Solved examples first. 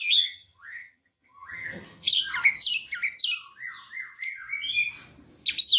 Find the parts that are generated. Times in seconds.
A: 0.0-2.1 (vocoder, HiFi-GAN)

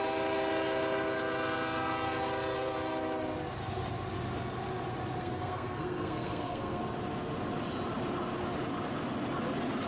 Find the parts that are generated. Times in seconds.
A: 5.2-6.8 (codec, SNAC)

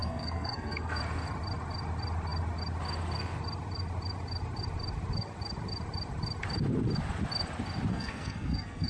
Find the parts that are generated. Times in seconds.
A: 0.0-1.0 (codec, SNAC); 7.9-8.9

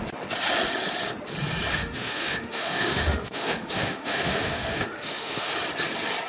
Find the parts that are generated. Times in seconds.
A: 1.7-5.5 (autoencoder, DAC-VAE)

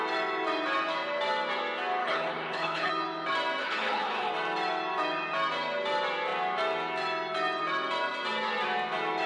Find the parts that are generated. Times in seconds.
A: 2.0-2.9 (codec, HILCodec); 3.6-4.3

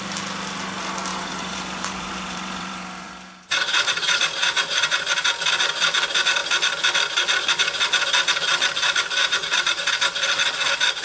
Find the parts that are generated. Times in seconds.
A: 1.1-5.1 (vocoder, BigVGAN v2); 9.2-9.9

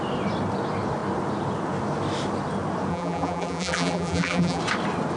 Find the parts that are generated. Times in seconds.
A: 2.9-4.6 (vocoder, BigVGAN v2)

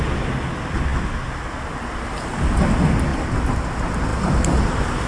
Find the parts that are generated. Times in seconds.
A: 3.1-3.6 (vocoder, BigVGAN v2); 4.1-5.1